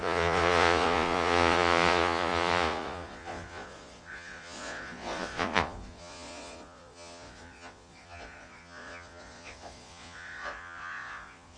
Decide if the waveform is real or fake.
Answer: fake